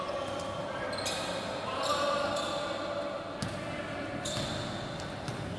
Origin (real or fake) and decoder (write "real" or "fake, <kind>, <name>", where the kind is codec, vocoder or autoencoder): real